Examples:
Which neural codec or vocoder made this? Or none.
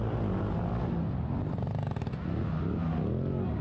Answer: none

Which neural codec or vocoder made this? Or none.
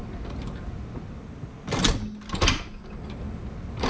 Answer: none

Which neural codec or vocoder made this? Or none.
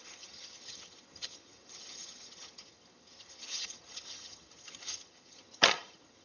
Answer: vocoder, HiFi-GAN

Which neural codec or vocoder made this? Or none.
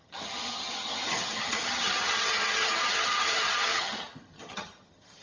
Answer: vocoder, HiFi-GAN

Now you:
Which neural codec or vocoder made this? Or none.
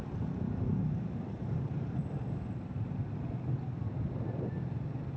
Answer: none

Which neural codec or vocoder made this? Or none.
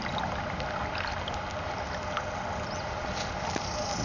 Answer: none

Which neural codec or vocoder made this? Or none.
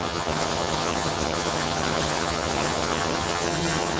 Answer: vocoder, HiFi-GAN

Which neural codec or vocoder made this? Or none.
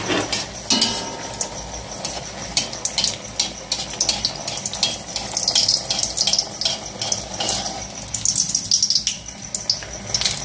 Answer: none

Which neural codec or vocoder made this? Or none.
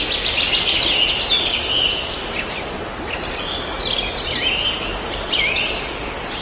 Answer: none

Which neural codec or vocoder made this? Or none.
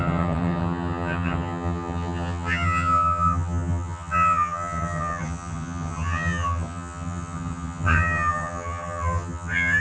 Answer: vocoder, HiFi-GAN